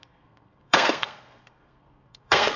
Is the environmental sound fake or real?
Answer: fake